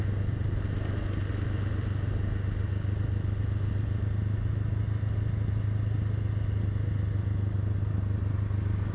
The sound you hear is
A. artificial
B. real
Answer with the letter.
B